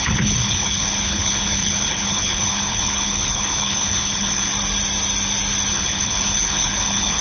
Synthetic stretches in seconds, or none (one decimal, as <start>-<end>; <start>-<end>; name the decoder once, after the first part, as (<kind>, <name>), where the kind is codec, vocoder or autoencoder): 0.0-4.5 (codec, HILCodec); 5.7-7.2